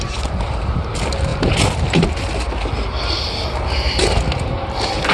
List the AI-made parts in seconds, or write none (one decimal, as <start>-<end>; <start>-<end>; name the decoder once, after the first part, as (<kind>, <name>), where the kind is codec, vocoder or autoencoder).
none